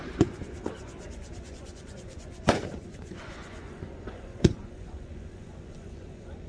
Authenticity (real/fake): fake